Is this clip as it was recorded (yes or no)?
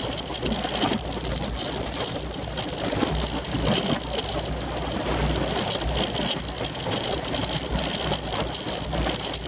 yes